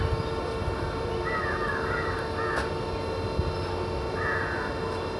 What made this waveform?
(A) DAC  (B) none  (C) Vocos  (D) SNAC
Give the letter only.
B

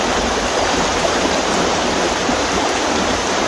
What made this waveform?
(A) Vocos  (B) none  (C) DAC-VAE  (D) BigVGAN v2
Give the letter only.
D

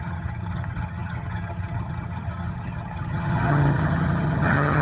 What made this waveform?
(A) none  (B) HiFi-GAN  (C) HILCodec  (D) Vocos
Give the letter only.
B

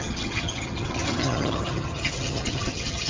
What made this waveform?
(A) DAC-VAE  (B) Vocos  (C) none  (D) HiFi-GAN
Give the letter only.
D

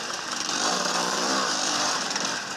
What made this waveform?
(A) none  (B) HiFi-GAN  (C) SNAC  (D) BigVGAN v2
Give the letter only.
D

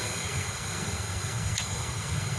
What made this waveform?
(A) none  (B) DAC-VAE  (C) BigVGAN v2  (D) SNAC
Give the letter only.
D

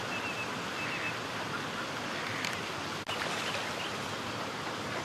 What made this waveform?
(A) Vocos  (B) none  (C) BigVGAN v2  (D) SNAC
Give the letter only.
B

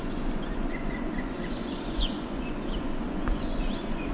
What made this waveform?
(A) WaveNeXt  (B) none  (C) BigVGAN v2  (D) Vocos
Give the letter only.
D